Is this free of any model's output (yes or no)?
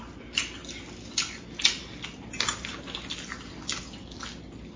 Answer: yes